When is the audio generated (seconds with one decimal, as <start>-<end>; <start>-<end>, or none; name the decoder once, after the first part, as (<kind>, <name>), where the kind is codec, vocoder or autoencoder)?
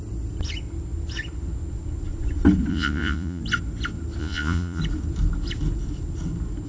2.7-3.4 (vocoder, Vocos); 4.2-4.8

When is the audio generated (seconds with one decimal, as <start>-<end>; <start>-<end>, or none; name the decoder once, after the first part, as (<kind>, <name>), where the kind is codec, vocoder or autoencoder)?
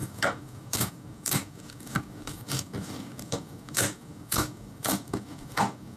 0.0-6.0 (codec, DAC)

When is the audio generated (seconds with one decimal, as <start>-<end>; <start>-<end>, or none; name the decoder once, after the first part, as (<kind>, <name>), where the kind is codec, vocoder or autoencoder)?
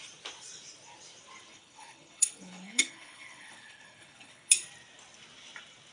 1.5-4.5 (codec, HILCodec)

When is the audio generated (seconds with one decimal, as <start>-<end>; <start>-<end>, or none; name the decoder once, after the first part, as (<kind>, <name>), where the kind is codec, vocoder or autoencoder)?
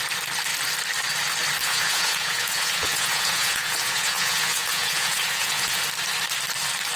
1.6-5.8 (vocoder, Vocos)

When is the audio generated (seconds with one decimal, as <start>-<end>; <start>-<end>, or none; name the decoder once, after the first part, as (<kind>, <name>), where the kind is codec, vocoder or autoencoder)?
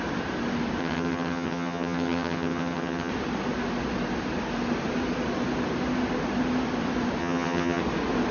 0.8-3.1 (vocoder, HiFi-GAN); 7.2-7.8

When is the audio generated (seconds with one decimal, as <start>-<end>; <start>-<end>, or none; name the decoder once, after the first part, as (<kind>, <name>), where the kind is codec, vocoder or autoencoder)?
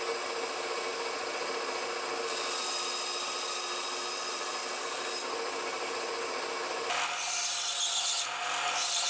none